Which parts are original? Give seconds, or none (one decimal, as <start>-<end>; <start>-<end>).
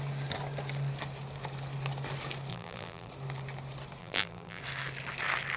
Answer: 0.0-2.5; 3.1-4.0; 4.6-5.6